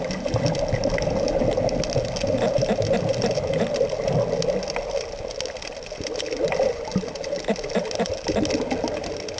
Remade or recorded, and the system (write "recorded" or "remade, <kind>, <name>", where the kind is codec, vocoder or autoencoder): recorded